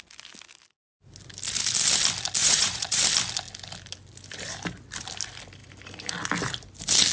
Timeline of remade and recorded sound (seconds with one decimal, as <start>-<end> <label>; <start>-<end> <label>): 0.0-2.4 recorded; 2.4-3.0 remade; 3.0-7.1 recorded